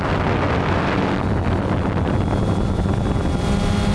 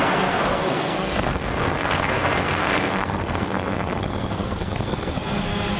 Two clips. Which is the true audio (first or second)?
first